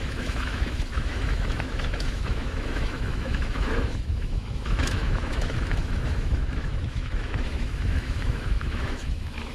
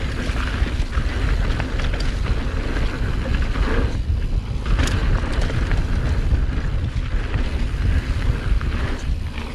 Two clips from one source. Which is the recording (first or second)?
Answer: second